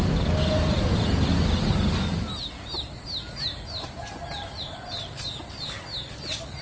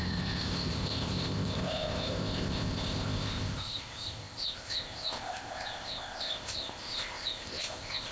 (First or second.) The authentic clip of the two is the first